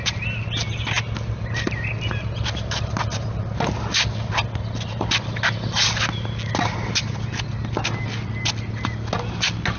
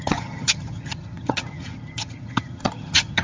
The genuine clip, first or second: first